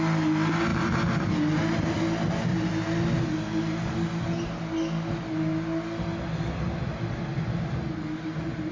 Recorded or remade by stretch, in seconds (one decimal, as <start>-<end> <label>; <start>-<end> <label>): 0.0-8.7 recorded